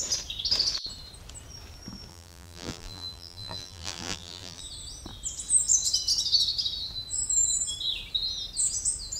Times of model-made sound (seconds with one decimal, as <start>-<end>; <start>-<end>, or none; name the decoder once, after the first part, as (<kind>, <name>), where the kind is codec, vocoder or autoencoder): 2.1-4.6 (vocoder, BigVGAN v2)